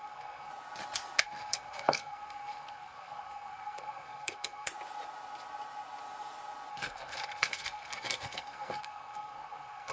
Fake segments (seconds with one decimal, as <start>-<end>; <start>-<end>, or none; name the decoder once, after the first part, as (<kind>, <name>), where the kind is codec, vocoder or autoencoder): 0.0-0.5 (codec, SNAC); 1.2-4.7; 6.7-9.9

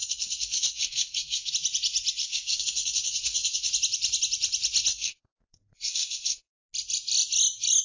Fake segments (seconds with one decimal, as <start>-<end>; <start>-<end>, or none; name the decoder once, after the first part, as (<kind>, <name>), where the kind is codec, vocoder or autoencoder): 0.0-1.5 (codec, SNAC); 2.2-3.7; 4.9-6.5